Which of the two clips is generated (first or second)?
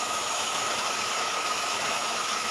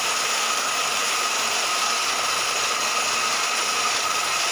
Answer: first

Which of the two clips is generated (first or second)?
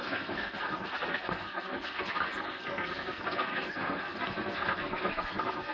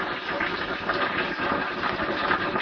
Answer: first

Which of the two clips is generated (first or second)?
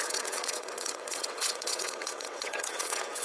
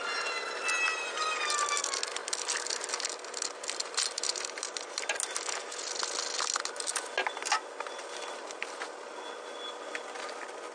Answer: first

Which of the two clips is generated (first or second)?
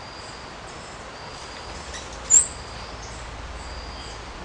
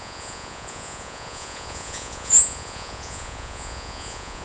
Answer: second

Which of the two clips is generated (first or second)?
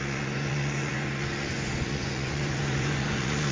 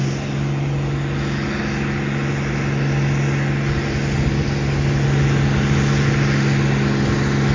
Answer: first